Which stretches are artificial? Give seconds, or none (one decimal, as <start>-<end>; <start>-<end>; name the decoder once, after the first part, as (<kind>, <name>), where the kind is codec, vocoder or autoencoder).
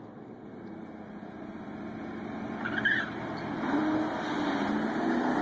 none